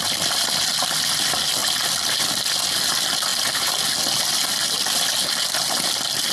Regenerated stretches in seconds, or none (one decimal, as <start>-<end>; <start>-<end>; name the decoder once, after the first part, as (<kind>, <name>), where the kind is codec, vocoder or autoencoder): none